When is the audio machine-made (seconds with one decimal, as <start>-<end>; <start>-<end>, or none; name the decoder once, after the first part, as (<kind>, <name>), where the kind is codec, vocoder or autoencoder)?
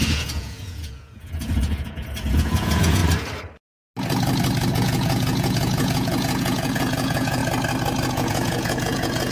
0.0-3.0 (vocoder, Vocos); 4.7-7.4; 8.1-9.3